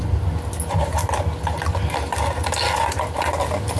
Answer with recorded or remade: recorded